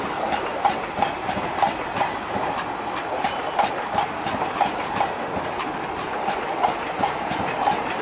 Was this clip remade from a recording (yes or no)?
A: no